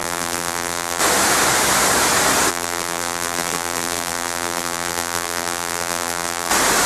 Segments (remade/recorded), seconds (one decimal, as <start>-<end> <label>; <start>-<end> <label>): 0.0-1.0 remade; 1.0-2.5 recorded; 2.5-6.5 remade; 6.5-6.9 recorded